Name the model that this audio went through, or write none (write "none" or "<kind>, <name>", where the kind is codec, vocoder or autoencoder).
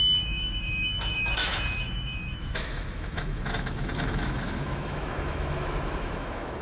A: autoencoder, DAC-VAE